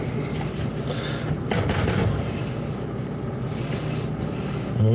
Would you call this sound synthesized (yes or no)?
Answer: no